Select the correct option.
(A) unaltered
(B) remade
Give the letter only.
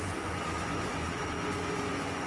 B